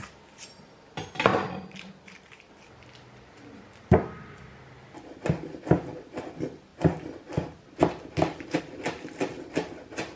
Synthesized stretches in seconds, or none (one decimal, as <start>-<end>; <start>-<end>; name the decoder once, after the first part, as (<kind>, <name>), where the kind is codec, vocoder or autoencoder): 1.3-2.5 (vocoder, BigVGAN v2)